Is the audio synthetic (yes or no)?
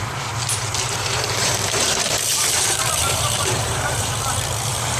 yes